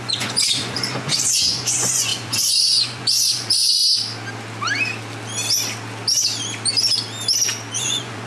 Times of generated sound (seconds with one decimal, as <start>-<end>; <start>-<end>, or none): 0.0-3.8; 7.8-8.3

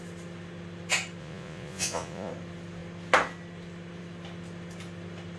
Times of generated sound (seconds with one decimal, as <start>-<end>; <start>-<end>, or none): 1.2-2.3

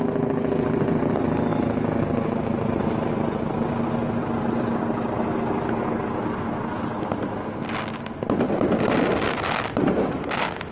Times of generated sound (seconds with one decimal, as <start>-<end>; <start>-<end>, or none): none